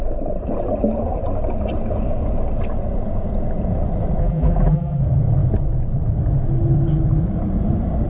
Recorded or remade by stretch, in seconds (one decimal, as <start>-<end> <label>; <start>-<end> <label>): 0.0-4.2 recorded; 4.2-5.0 remade; 5.0-8.1 recorded